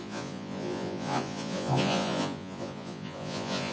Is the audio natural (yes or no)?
no